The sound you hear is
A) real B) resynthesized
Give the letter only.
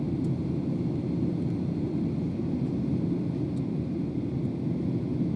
A